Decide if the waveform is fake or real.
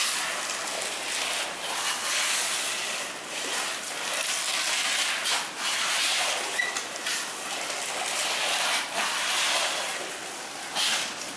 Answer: real